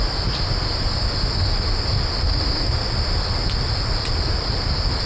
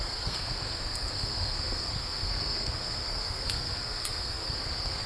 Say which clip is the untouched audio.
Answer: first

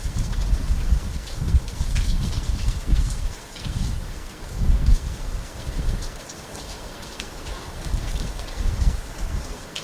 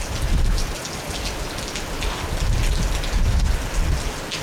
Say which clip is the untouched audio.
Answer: second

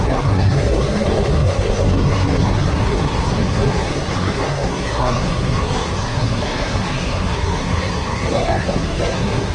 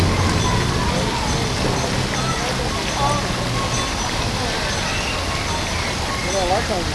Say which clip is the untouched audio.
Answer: second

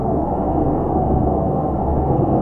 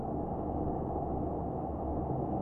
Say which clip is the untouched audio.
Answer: second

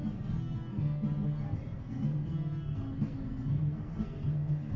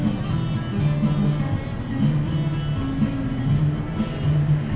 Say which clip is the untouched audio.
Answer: second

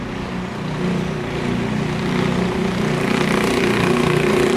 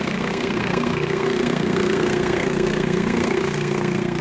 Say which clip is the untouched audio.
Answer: first